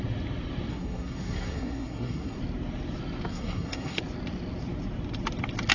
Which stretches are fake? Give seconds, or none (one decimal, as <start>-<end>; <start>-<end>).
0.7-2.4; 3.3-4.0